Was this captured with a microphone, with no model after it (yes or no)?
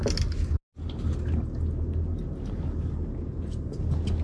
yes